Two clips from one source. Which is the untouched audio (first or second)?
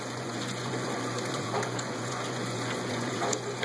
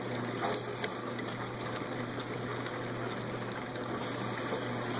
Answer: second